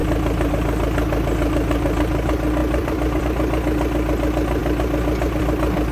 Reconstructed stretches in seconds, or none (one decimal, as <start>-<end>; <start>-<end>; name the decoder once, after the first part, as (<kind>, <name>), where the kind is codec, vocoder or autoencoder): 2.6-3.2 (vocoder, BigVGAN v2)